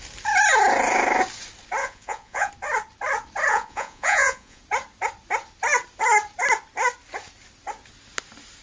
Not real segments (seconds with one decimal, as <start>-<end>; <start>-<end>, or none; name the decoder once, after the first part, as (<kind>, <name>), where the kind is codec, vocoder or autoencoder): 1.8-2.5 (vocoder, Vocos); 3.5-4.6